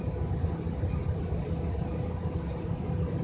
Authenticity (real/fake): real